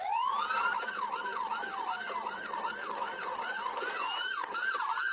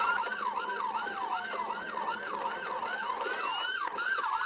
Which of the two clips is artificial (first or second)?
first